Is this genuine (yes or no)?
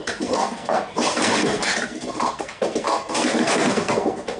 no